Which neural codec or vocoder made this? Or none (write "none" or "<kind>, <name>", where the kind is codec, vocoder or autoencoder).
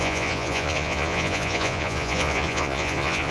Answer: vocoder, Vocos